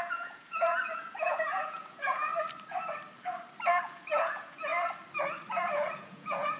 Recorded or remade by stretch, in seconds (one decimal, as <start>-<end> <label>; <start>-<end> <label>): 0.0-2.3 remade; 2.3-3.8 recorded; 3.8-4.7 remade; 4.7-5.5 recorded; 5.5-6.6 remade